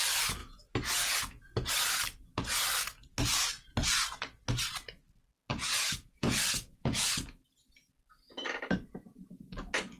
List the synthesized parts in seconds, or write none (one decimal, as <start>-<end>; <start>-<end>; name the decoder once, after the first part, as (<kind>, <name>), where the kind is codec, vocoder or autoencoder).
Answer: 0.4-1.7 (vocoder, Vocos); 5.5-7.1

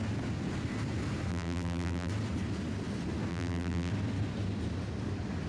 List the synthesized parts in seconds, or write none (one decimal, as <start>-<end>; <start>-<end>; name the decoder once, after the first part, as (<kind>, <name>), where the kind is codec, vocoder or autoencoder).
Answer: 1.3-2.1 (vocoder, BigVGAN v2); 3.3-3.9

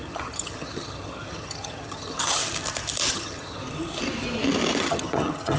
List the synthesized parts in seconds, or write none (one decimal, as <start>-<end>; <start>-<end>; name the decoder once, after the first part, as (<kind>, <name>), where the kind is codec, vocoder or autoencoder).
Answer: 0.0-2.4 (vocoder, HiFi-GAN); 3.1-3.6; 4.8-5.6